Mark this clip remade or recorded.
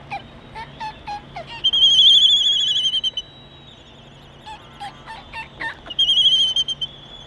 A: recorded